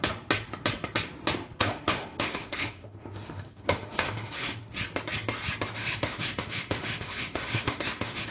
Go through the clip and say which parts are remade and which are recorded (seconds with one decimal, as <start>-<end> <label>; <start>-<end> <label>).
0.0-1.6 recorded; 1.6-4.6 remade; 4.6-5.8 recorded; 5.8-8.3 remade